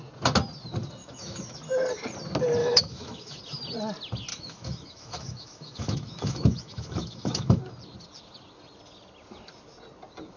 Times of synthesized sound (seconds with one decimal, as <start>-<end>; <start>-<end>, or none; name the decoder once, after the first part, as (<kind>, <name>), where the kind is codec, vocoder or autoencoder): 1.0-1.6 (autoencoder, DAC-VAE); 2.6-3.4; 4.3-7.6